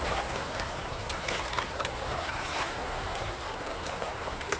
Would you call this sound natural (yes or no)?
no